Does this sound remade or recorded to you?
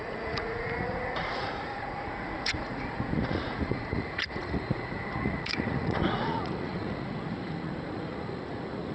remade